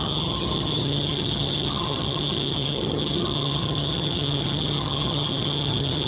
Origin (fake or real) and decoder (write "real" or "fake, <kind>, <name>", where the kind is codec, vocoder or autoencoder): fake, vocoder, HiFi-GAN